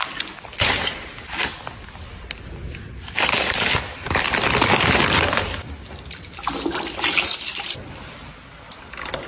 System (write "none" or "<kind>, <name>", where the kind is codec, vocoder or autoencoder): none